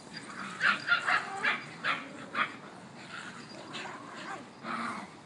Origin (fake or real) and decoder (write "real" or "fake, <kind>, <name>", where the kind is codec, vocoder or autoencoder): real